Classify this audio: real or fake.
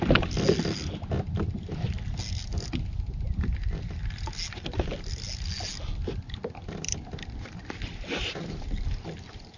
real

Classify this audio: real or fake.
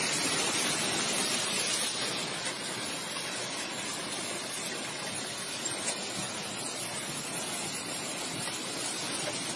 real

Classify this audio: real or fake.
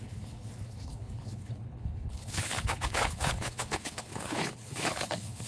fake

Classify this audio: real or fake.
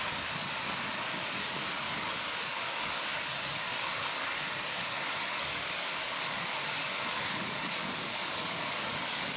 fake